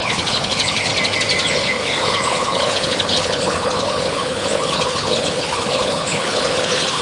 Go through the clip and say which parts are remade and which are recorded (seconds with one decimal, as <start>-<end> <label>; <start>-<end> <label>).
0.0-0.9 remade; 0.9-1.5 recorded; 1.5-7.0 remade